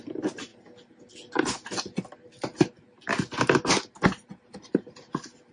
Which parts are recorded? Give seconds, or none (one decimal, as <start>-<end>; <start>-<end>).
0.0-5.5